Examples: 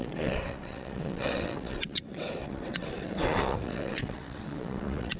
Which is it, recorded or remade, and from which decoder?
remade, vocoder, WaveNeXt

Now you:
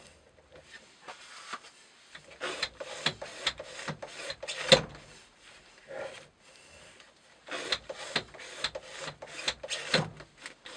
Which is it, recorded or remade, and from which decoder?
recorded